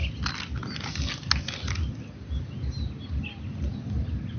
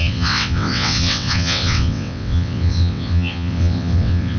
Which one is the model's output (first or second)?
second